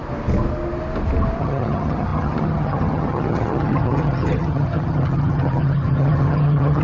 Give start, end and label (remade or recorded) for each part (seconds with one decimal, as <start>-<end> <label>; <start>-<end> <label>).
0.0-1.4 recorded; 1.4-6.8 remade